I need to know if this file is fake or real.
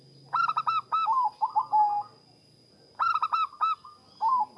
real